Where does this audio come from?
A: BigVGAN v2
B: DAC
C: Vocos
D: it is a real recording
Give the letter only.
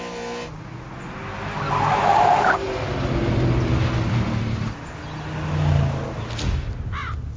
D